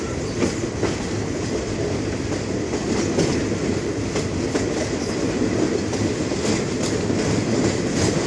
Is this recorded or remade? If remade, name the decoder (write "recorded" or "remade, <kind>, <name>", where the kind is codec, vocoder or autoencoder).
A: recorded